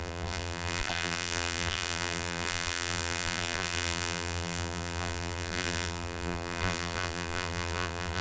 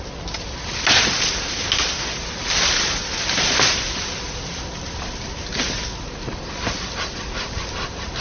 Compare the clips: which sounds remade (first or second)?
first